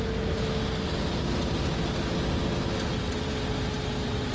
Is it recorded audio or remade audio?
recorded